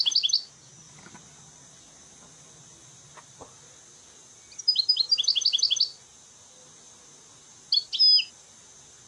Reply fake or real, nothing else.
real